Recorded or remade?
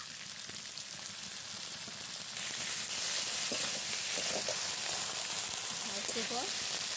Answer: recorded